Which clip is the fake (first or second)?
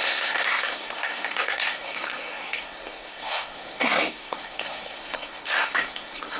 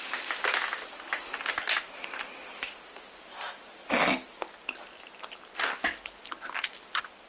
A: first